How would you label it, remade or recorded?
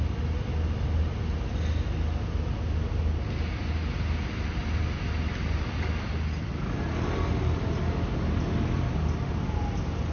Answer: recorded